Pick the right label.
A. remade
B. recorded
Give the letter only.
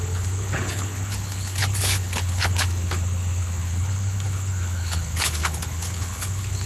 A